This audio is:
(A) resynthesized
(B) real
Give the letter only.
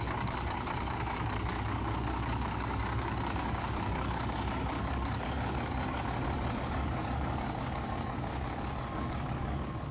A